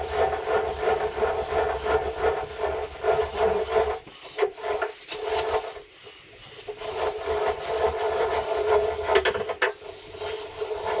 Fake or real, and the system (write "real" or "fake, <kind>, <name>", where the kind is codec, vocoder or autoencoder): real